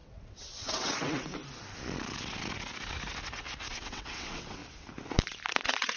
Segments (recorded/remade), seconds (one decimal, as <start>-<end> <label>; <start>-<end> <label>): 0.0-1.4 remade; 1.4-3.7 recorded; 3.7-4.6 remade; 4.6-5.5 recorded; 5.5-6.0 remade